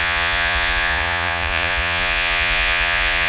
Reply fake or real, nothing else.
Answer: fake